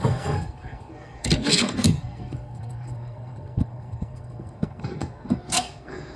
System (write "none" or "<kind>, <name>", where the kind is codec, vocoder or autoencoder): codec, SNAC